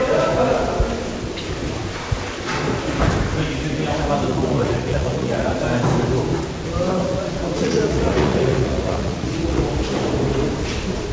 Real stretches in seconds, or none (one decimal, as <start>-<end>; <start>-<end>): 0.0-4.3; 5.6-7.0; 9.6-11.1